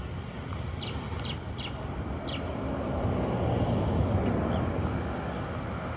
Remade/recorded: recorded